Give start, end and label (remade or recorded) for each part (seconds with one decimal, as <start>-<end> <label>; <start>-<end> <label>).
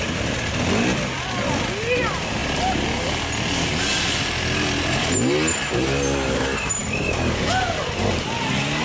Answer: 0.0-8.8 recorded